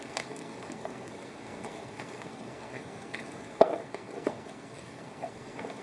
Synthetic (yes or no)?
yes